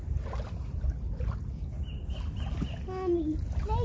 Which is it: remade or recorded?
recorded